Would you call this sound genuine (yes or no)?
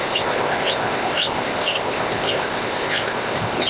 no